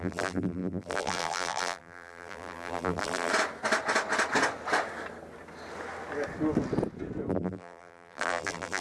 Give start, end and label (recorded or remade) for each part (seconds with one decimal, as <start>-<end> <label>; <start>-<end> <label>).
0.0-3.3 remade; 3.3-7.3 recorded; 7.3-8.8 remade